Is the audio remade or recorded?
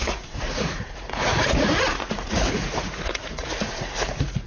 remade